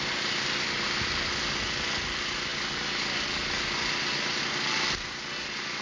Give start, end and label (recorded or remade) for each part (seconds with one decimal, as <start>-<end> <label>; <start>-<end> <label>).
0.0-5.8 recorded